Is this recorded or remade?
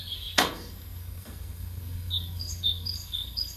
remade